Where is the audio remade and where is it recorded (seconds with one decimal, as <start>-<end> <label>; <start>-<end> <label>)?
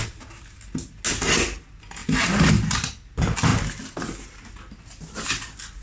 0.0-5.8 recorded